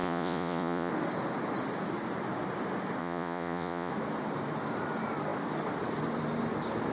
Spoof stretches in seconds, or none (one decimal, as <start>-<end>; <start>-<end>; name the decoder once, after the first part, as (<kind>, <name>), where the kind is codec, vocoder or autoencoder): 0.0-0.9 (vocoder, Vocos); 3.0-3.9